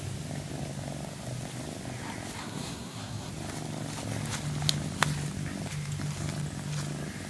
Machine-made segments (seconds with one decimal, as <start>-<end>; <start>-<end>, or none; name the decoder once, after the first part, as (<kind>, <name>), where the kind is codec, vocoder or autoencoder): 2.4-3.3 (codec, SNAC)